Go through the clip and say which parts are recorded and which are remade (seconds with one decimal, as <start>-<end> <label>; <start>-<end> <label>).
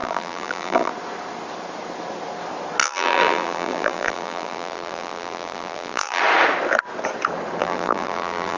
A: 0.0-0.9 remade; 0.9-2.8 recorded; 2.8-6.2 remade; 6.2-7.6 recorded; 7.6-8.6 remade